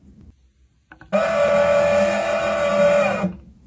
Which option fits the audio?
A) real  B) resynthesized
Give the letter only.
A